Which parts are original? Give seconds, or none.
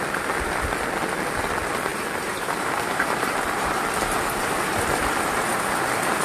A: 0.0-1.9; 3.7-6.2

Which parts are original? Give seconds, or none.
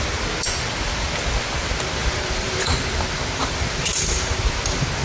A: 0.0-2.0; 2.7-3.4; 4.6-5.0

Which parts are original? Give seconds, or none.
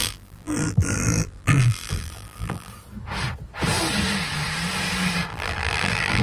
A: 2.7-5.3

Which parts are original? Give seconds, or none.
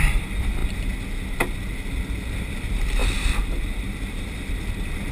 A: 0.6-2.5; 3.0-3.5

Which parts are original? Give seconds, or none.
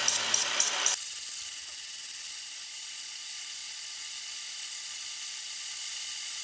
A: 3.6-5.1